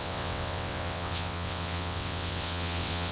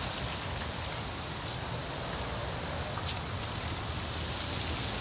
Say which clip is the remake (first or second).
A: first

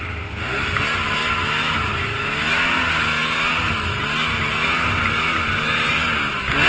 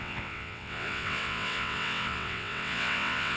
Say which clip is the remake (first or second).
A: second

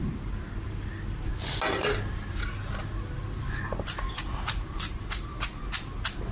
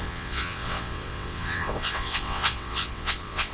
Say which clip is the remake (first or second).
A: second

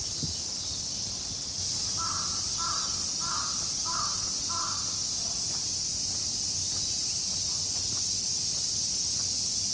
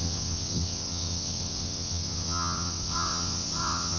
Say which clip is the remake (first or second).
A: second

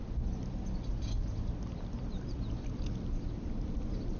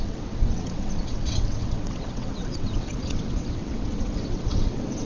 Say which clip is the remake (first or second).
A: second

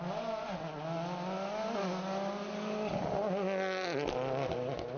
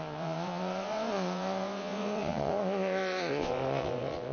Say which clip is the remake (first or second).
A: second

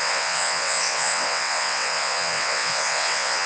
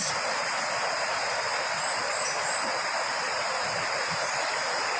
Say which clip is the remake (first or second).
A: first